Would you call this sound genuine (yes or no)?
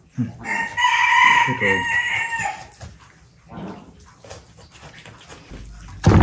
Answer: yes